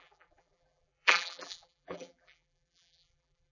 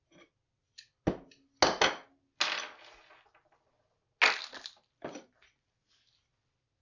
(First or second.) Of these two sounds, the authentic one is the second